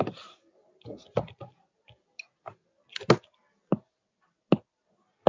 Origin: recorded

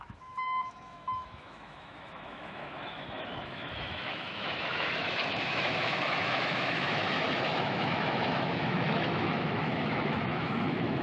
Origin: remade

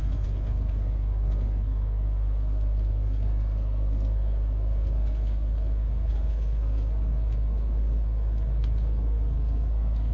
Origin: remade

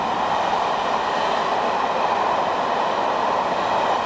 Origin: recorded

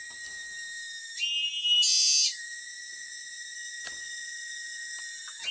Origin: recorded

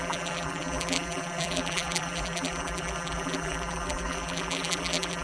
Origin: remade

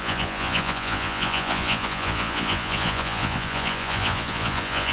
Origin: remade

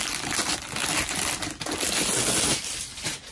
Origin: recorded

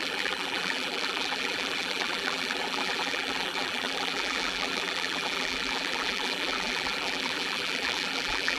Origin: remade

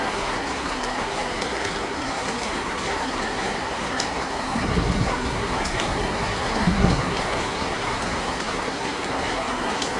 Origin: remade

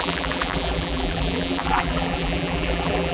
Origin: remade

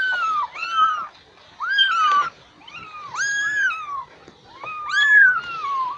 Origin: recorded